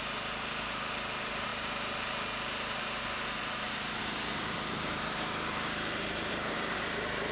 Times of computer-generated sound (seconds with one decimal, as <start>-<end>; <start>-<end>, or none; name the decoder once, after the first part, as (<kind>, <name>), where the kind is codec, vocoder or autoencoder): 0.0-7.3 (vocoder, BigVGAN v2)